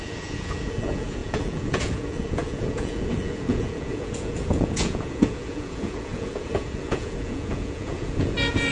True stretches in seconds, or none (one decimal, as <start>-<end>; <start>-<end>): none